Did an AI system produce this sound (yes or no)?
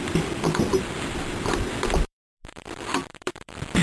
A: yes